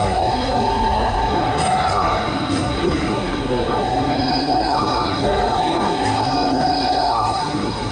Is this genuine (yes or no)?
no